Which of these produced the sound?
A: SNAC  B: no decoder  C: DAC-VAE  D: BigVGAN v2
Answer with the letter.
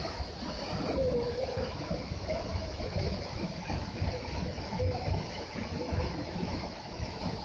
C